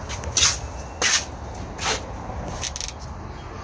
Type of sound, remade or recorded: recorded